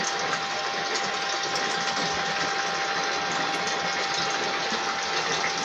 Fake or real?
real